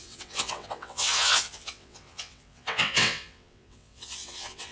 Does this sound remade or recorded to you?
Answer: remade